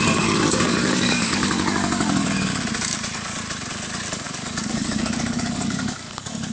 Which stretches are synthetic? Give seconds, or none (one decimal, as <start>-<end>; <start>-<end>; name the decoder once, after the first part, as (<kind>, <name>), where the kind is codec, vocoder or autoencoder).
0.0-2.5 (codec, DAC); 4.1-6.5

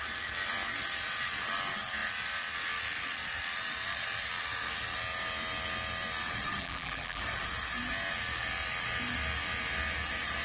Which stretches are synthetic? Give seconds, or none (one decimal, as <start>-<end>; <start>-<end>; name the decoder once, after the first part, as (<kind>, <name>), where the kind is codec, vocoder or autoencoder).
6.6-7.2 (vocoder, BigVGAN v2)

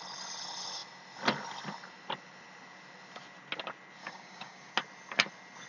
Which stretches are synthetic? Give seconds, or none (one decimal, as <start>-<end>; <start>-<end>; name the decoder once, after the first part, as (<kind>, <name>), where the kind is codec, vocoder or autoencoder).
4.0-4.7 (codec, DAC)

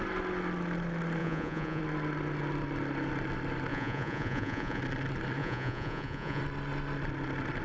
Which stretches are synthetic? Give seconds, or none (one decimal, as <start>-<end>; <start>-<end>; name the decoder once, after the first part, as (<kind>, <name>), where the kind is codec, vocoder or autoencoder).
1.2-1.8 (vocoder, Vocos); 3.7-4.8; 5.4-6.4

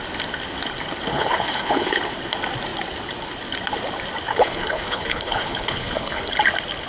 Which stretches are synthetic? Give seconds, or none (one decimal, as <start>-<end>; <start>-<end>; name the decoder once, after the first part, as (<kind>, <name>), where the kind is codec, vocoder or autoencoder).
1.1-2.0 (codec, HILCodec); 4.3-6.3

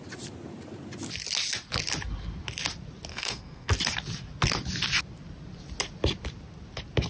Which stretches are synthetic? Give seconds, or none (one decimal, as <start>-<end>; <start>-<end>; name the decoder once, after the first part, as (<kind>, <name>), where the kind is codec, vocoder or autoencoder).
3.1-3.7 (codec, SNAC)

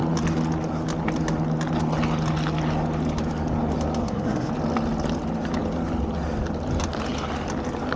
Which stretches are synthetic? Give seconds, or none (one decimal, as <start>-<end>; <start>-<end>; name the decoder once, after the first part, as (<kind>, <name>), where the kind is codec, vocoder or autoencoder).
4.0-4.5 (codec, SNAC)